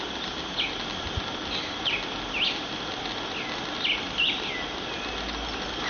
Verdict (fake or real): real